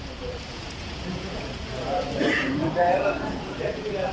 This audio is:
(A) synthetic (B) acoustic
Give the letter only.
A